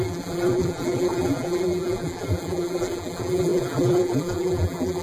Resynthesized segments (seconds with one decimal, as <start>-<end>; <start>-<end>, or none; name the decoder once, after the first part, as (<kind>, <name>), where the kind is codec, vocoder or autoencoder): 0.0-5.0 (vocoder, BigVGAN v2)